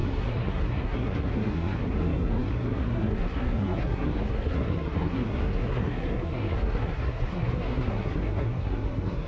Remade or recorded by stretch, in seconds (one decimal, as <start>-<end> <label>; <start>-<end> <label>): 0.0-9.3 remade